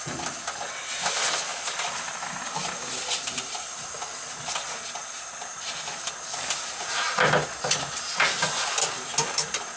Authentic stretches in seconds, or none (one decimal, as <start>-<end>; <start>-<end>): 0.0-1.5; 6.1-9.8